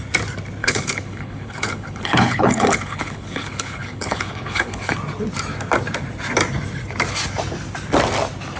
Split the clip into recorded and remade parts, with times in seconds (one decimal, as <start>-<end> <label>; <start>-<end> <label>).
0.0-0.6 recorded; 0.6-4.9 remade; 4.9-8.6 recorded